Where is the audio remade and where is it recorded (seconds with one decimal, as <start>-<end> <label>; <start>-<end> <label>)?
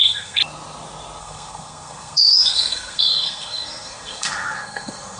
0.0-0.4 remade; 0.4-1.2 recorded; 1.2-5.2 remade